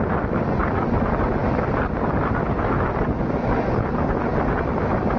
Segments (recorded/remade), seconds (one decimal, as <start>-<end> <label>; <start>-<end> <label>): 0.0-5.2 recorded